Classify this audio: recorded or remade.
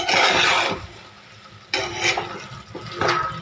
recorded